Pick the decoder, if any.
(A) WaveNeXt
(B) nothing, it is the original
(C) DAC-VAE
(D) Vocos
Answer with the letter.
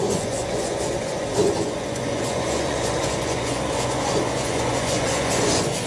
D